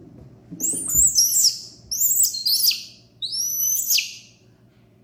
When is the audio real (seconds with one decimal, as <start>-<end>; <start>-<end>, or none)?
0.0-3.0; 3.8-4.4